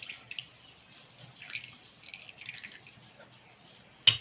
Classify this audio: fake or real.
real